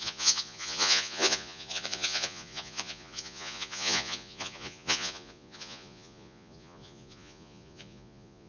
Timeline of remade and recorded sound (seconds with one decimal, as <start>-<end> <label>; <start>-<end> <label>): 0.0-8.5 remade